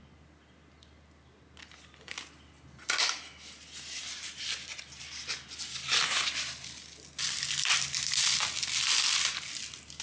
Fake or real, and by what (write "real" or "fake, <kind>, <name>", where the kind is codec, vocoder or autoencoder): real